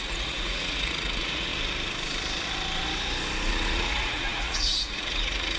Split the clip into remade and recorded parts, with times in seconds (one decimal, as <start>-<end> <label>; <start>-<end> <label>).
0.0-1.5 remade; 1.5-3.5 recorded; 3.5-5.6 remade